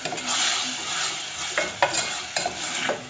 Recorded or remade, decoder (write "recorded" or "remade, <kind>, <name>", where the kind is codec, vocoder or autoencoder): recorded